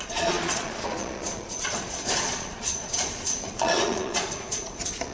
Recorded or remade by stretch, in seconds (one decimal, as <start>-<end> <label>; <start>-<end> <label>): 0.0-5.1 remade